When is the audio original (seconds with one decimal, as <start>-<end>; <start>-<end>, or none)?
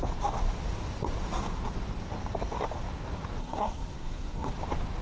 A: 0.0-3.4; 4.5-5.0